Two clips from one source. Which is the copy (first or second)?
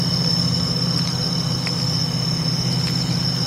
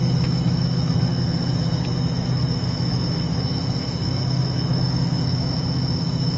second